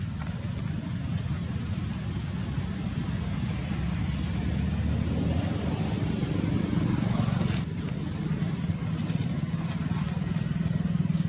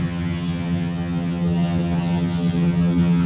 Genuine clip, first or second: first